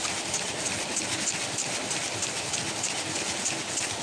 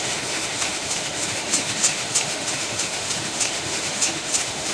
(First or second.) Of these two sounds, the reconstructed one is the second